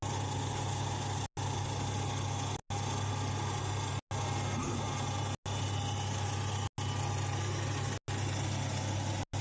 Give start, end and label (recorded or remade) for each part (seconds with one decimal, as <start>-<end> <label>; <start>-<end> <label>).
0.0-9.4 recorded